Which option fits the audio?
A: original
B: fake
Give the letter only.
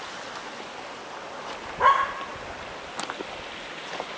A